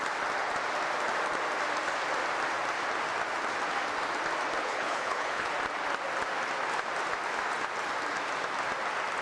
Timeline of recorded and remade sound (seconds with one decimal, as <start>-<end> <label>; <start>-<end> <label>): 0.0-4.6 recorded; 4.6-5.5 remade; 5.5-9.2 recorded

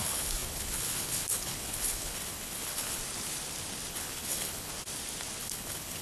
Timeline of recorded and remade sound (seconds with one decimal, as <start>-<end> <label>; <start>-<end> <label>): 0.0-3.0 remade; 3.0-3.9 recorded; 3.9-4.7 remade; 4.7-5.4 recorded; 5.4-6.0 remade

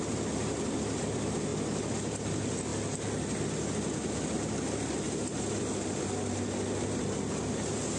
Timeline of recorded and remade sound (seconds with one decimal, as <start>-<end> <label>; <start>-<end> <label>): 0.0-8.0 recorded

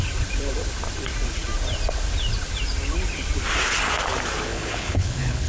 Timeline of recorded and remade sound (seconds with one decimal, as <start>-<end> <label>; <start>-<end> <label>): 0.0-4.5 recorded; 4.5-5.5 remade

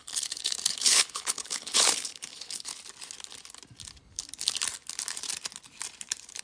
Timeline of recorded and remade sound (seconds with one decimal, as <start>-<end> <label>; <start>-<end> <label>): 0.0-2.7 remade; 2.7-6.4 recorded

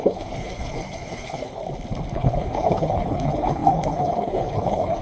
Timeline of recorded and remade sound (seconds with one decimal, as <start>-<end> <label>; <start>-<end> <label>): 0.0-1.6 remade; 1.6-2.1 recorded; 2.1-5.0 remade

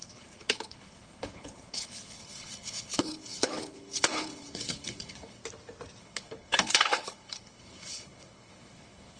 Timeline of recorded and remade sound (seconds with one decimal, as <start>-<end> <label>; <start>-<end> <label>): 0.0-5.4 remade; 5.4-6.0 recorded; 6.0-9.2 remade